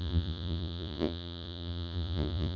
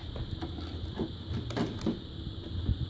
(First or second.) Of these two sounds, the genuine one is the second